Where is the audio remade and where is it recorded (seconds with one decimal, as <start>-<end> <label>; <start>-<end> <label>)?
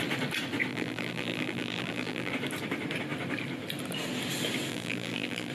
0.0-0.7 recorded; 0.7-2.3 remade; 2.3-4.7 recorded; 4.7-5.5 remade